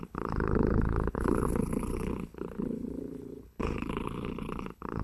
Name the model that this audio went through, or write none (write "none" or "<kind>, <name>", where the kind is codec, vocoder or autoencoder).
codec, HILCodec